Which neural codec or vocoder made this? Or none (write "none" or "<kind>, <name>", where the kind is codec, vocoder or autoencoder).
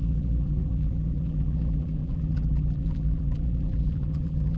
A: vocoder, BigVGAN v2